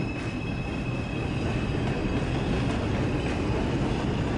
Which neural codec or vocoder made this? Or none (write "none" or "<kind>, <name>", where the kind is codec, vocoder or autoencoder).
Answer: none